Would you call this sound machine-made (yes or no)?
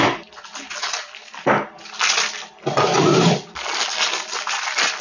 no